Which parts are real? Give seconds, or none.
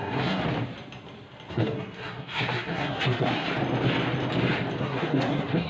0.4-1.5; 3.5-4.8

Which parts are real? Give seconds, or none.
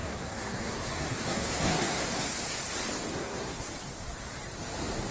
2.4-3.1; 3.7-5.1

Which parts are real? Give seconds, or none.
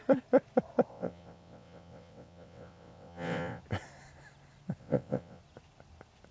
0.0-0.9; 3.6-4.8; 5.4-6.3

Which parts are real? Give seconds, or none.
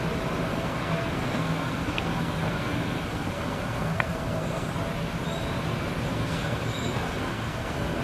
0.0-0.5; 4.7-6.1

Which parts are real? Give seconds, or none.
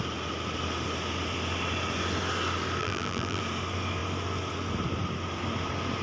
0.0-2.8; 3.4-6.0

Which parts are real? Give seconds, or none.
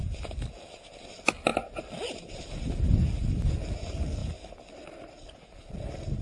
0.0-6.2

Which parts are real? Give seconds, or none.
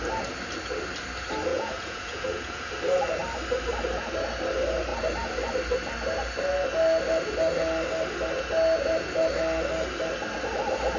0.0-1.5; 2.7-11.0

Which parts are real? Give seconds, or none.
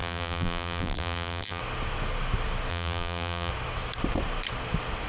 1.6-2.7; 3.5-5.1